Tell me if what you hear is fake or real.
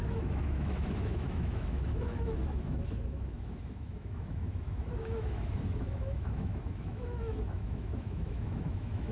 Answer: fake